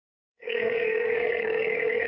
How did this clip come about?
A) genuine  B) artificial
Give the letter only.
B